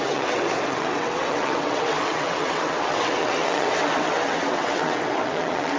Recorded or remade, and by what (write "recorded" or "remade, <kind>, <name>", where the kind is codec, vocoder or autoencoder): remade, vocoder, WaveNeXt